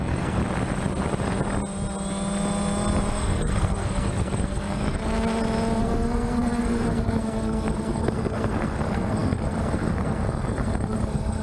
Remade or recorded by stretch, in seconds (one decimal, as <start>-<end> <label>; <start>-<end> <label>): 0.0-0.4 remade; 0.4-3.1 recorded; 3.1-5.0 remade; 5.0-5.8 recorded; 5.8-11.4 remade